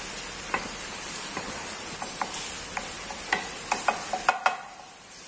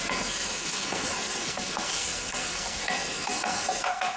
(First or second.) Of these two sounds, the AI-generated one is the second